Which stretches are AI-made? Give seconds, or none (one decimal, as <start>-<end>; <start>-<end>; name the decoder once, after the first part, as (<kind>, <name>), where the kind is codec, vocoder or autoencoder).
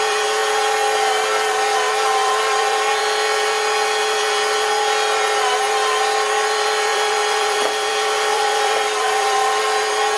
2.2-3.0 (vocoder, BigVGAN v2); 6.9-9.6